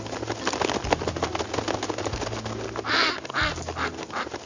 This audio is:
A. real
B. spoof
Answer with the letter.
A